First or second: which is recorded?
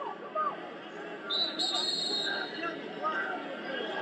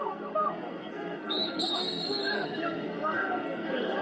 first